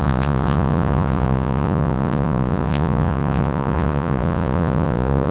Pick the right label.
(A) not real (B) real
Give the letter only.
A